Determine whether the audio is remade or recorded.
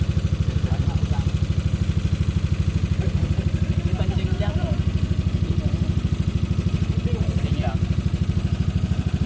recorded